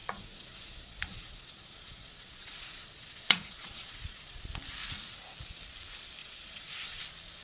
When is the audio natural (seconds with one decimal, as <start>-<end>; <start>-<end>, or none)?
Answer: 4.4-6.2; 7.0-7.4